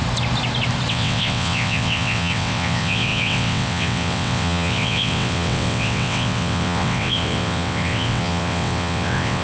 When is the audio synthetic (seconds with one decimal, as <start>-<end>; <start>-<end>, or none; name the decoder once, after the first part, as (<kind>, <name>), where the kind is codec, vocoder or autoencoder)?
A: 0.9-9.4 (vocoder, WaveNeXt)